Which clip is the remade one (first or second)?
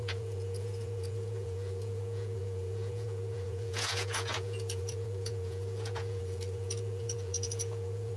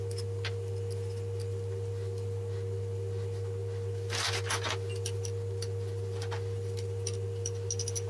first